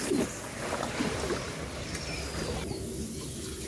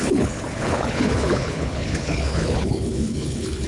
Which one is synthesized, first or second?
second